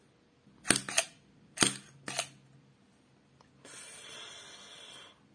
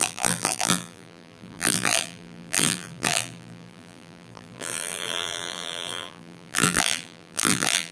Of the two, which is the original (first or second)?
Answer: first